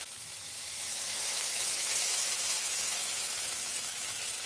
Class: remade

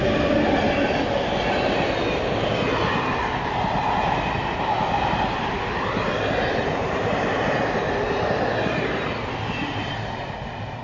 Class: recorded